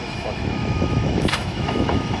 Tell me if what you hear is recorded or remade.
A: remade